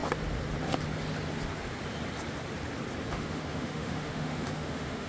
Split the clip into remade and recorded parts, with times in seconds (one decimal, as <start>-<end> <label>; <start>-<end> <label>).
0.0-3.1 recorded; 3.1-5.1 remade